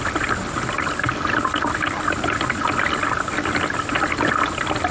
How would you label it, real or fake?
real